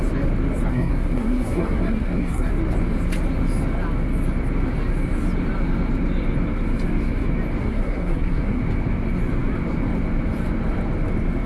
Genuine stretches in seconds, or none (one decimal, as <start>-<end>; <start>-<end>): 0.0-0.7; 2.5-7.6; 8.6-11.5